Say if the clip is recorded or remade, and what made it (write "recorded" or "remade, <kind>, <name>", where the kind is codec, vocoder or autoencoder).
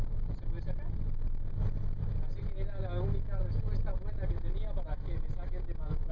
recorded